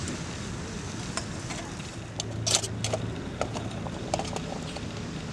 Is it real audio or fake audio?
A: real